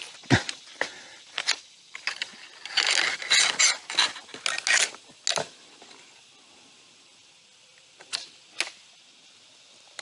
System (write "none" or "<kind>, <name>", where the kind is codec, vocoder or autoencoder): none